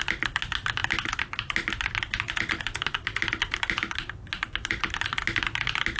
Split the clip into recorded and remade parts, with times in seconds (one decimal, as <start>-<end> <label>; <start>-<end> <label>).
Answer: 0.0-6.0 recorded